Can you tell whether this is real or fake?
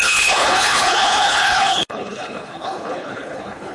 fake